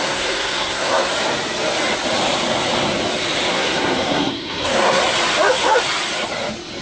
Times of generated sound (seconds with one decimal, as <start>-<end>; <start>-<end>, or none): 0.0-1.1; 3.5-5.0